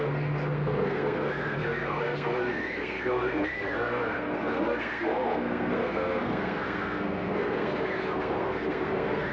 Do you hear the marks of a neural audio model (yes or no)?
yes